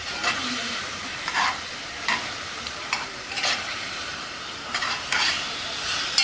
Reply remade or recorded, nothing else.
remade